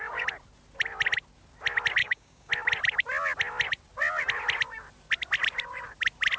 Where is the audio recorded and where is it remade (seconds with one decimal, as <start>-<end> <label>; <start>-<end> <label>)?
0.0-2.0 recorded; 2.0-2.5 remade; 2.5-6.4 recorded